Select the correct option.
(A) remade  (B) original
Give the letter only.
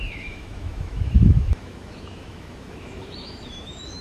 A